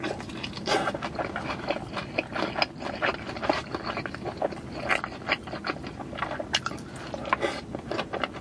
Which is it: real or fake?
real